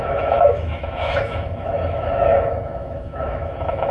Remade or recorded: remade